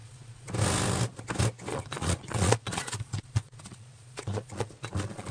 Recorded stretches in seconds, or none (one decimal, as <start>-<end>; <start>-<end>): 0.5-1.7